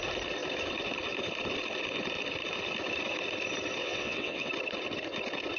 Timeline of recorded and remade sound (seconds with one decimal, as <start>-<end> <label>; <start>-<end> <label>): 0.0-3.8 recorded; 3.8-4.5 remade; 4.5-5.6 recorded